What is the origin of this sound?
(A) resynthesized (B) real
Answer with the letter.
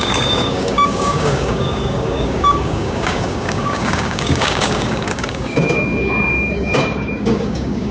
A